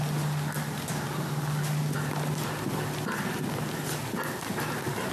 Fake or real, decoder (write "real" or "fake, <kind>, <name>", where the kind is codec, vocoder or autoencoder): real